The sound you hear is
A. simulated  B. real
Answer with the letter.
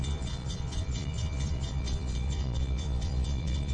A